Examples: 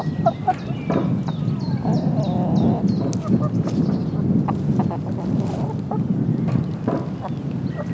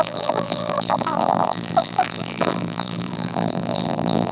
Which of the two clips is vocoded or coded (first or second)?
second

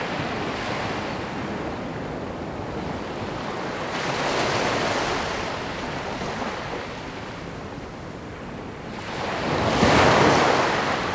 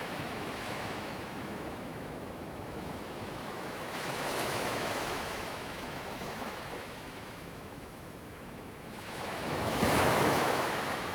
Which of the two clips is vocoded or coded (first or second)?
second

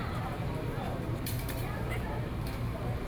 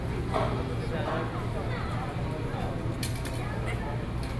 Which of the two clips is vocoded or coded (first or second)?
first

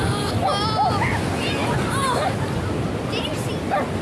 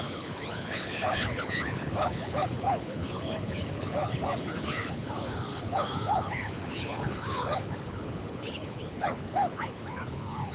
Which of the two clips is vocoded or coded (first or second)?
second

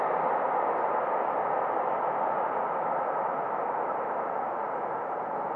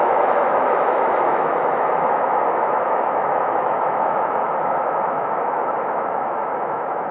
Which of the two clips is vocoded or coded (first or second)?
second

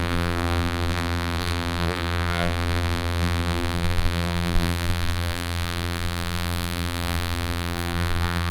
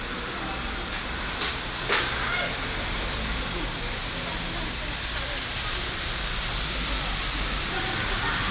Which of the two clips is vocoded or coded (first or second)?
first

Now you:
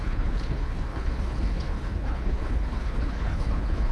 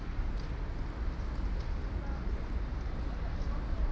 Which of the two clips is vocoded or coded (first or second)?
first